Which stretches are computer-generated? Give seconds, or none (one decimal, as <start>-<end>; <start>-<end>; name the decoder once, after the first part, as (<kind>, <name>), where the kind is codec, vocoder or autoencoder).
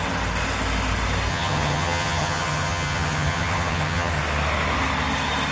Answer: 1.3-4.1 (vocoder, HiFi-GAN)